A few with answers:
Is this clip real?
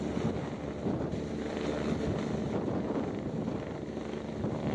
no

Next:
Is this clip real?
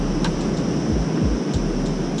yes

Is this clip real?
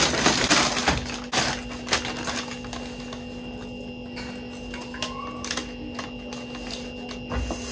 yes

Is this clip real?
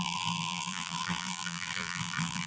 no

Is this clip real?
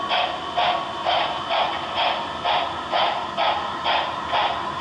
yes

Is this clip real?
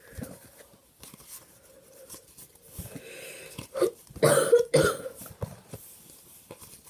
yes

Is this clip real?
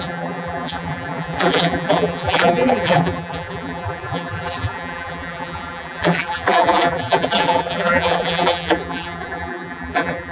no